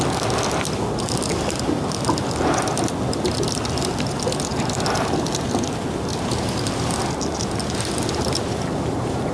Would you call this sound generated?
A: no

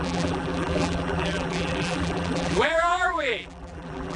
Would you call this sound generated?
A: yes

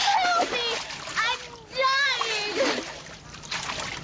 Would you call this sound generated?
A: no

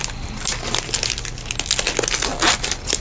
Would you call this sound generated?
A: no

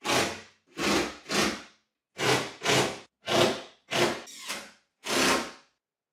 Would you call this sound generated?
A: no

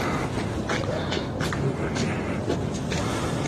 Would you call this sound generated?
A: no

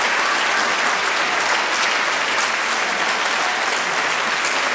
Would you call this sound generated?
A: no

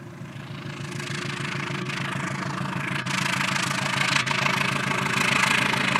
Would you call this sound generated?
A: no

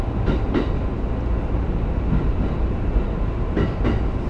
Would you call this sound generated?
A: no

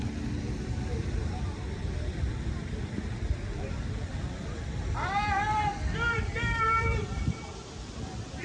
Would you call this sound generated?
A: yes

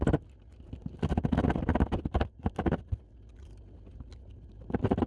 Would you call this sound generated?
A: no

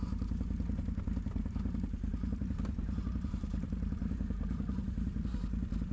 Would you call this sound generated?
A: yes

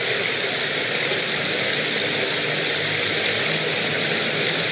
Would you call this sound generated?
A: no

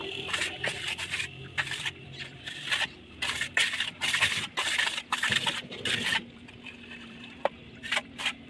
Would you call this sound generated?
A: yes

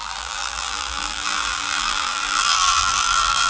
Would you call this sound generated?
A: yes